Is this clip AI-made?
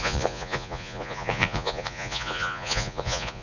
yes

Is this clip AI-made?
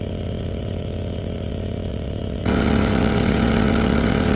yes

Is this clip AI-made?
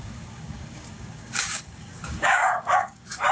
yes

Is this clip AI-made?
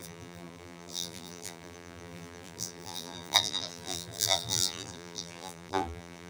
yes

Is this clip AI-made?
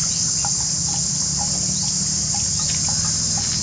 no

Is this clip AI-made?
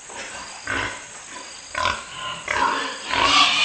no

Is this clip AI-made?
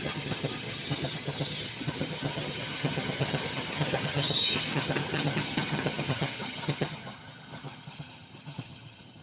yes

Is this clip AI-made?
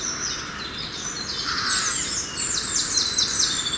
no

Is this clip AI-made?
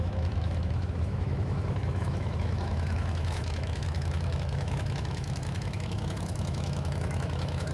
yes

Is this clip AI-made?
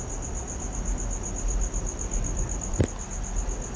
no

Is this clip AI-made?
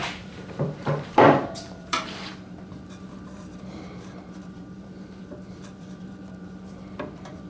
yes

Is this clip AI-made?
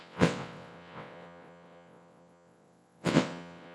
yes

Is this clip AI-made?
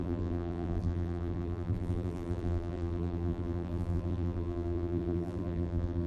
yes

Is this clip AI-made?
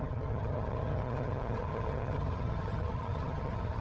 yes